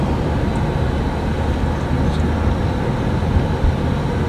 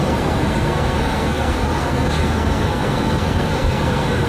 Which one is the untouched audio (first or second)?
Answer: first